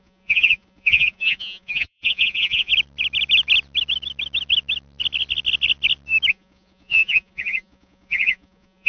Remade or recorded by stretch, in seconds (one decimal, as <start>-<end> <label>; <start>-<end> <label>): 0.0-2.7 remade; 2.7-6.3 recorded; 6.3-8.9 remade